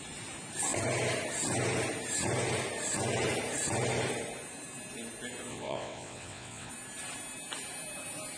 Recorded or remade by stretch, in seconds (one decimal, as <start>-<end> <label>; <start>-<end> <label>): 0.0-5.5 recorded; 5.5-6.7 remade; 6.7-8.4 recorded